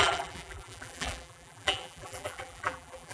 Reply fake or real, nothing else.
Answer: fake